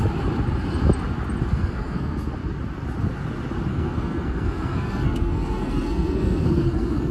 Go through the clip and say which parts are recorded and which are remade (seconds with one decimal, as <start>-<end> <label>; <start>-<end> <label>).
0.0-1.5 recorded; 1.5-2.3 remade; 2.3-3.7 recorded; 3.7-7.1 remade